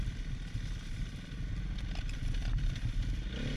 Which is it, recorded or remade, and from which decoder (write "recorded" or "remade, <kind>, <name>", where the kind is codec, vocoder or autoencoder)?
recorded